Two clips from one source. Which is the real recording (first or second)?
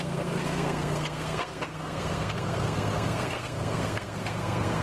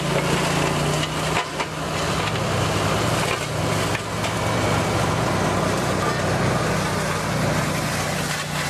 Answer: second